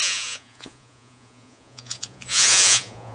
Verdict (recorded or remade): remade